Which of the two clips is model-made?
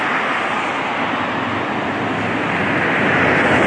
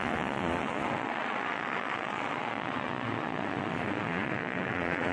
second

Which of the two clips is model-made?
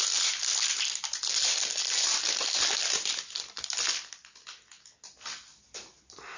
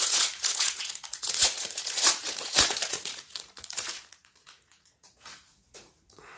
second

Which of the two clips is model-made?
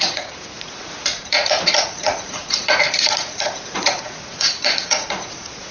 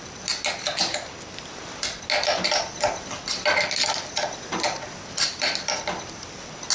first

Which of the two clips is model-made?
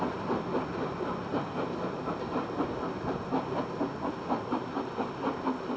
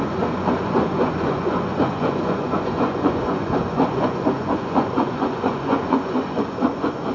second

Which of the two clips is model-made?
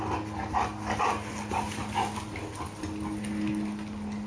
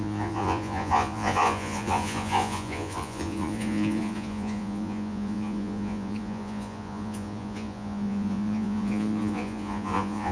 second